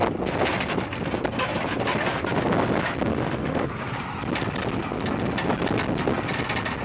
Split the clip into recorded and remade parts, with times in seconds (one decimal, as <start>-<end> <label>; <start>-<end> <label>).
0.0-3.1 recorded; 3.1-3.7 remade; 3.7-6.8 recorded